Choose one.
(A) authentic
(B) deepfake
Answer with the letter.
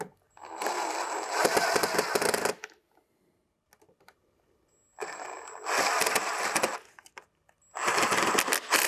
A